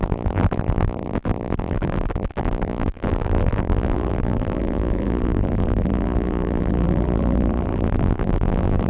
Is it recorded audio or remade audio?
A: remade